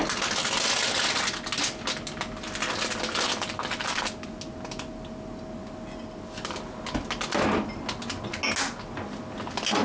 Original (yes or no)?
yes